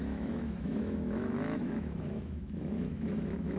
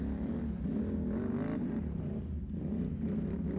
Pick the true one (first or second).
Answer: second